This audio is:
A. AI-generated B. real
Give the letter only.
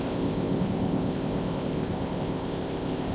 A